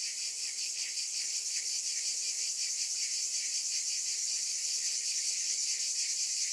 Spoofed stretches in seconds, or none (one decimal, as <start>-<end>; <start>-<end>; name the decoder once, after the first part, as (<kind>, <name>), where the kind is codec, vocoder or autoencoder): 0.4-1.8 (codec, HILCodec); 4.2-5.8